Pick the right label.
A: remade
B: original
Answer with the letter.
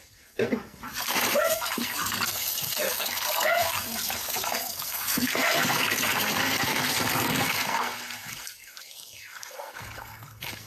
A